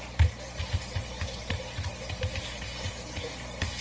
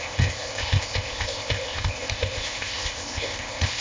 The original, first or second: first